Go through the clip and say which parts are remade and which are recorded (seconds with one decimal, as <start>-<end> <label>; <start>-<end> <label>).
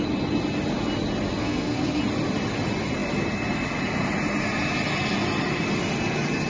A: 0.0-1.4 recorded; 1.4-2.0 remade; 2.0-6.5 recorded